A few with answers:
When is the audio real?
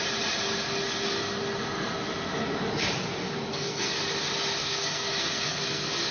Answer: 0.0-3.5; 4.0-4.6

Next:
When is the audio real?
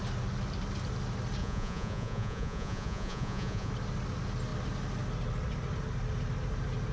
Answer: 0.0-1.4; 3.7-6.9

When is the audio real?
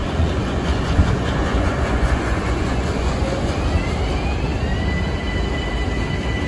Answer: 3.5-6.5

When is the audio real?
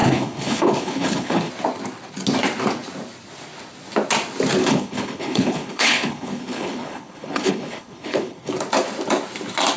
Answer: 1.5-4.6; 8.5-9.8